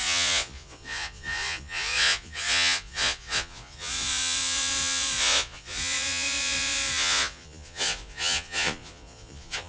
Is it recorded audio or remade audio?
remade